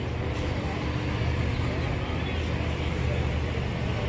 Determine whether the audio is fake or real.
real